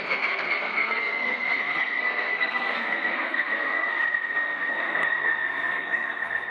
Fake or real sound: fake